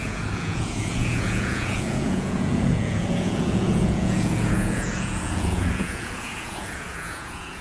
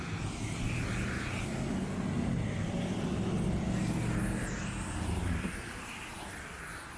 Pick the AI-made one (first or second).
first